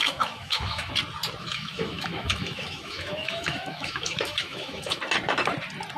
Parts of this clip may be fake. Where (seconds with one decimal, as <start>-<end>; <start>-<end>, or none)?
0.0-0.9; 1.4-5.0